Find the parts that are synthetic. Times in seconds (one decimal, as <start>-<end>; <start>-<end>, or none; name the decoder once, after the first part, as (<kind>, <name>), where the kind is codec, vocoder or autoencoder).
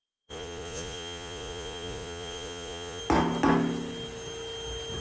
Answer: 0.0-3.0 (vocoder, Vocos)